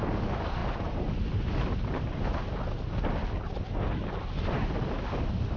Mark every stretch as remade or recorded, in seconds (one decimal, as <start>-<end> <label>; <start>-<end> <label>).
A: 0.0-5.6 recorded